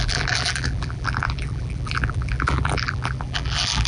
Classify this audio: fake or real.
fake